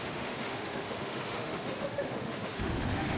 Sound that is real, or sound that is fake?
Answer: fake